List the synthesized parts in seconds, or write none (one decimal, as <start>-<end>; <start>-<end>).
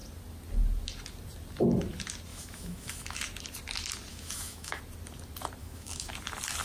2.3-3.2; 4.1-4.8; 5.6-6.1